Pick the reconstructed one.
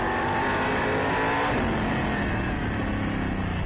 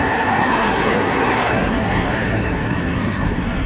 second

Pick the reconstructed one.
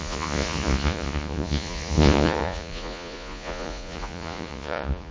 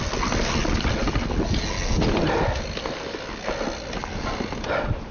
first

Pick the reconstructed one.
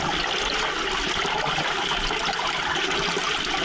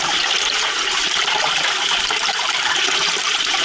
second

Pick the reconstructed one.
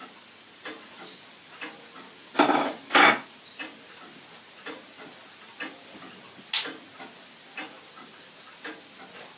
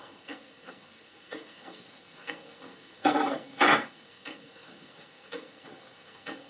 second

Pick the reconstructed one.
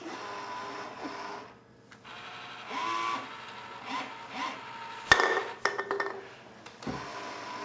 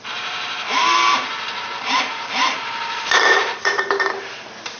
second